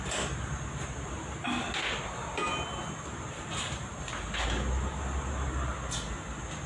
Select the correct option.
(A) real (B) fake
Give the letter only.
A